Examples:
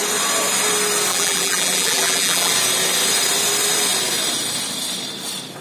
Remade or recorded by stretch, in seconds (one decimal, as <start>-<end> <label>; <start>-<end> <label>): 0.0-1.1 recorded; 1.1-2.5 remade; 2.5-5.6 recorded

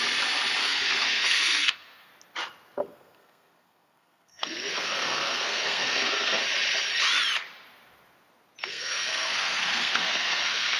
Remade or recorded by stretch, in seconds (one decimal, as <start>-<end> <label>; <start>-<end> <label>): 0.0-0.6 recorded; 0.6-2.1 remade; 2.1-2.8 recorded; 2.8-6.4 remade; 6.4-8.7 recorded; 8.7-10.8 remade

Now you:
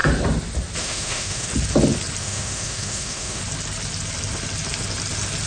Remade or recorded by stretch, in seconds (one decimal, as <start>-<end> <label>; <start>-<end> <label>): 0.0-0.8 recorded; 0.8-1.5 remade; 1.5-2.2 recorded; 2.2-3.4 remade; 3.4-5.5 recorded

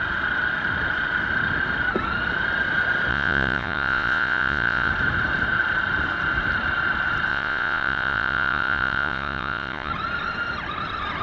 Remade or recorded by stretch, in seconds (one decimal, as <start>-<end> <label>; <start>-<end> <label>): 0.0-3.1 recorded; 3.1-4.9 remade; 4.9-7.3 recorded; 7.3-9.9 remade; 9.9-11.2 recorded

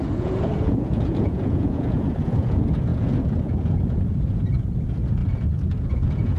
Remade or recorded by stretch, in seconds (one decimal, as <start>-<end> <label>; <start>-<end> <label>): 0.0-5.2 remade; 5.2-5.8 recorded; 5.8-6.4 remade

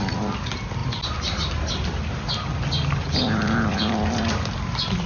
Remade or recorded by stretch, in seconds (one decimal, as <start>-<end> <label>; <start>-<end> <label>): 0.0-5.1 recorded

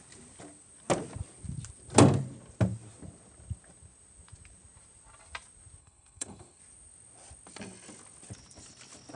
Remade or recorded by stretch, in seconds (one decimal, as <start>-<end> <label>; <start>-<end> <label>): 0.0-5.8 recorded; 5.8-6.6 remade; 6.6-9.2 recorded